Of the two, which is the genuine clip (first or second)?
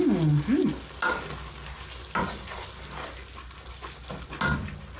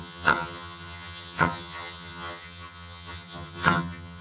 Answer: first